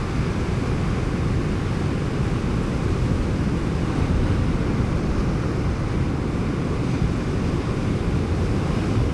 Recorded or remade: recorded